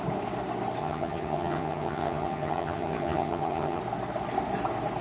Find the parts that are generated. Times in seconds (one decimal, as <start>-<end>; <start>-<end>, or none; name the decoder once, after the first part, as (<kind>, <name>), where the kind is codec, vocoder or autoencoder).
0.8-3.8 (vocoder, HiFi-GAN)